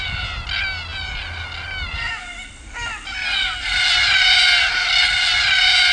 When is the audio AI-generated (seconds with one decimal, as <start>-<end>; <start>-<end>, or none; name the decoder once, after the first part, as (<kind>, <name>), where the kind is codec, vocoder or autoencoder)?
none